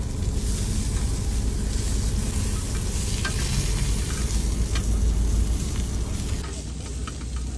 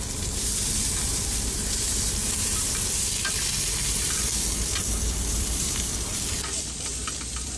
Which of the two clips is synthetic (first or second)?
second